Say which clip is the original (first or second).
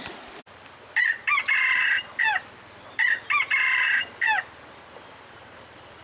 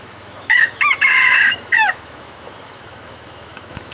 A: first